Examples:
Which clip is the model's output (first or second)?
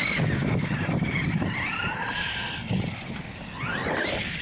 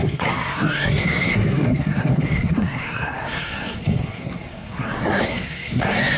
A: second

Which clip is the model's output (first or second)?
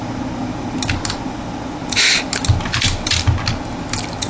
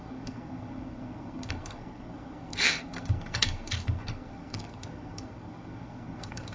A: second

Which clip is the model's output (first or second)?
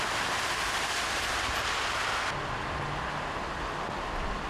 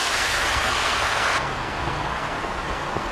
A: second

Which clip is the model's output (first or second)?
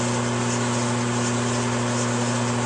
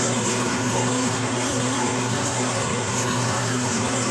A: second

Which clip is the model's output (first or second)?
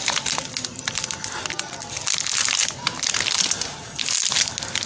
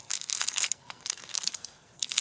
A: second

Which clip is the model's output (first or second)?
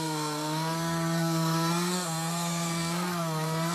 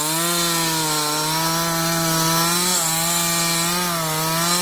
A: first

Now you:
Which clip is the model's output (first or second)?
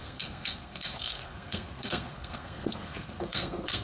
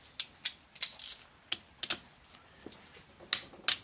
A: first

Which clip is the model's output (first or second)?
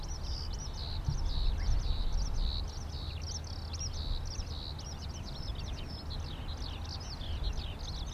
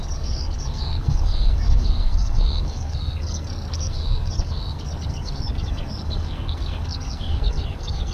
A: second